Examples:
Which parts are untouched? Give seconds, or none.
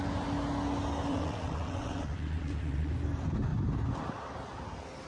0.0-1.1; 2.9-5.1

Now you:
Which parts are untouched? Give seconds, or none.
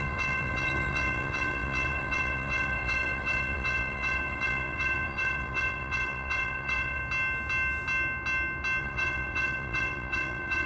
7.0-8.8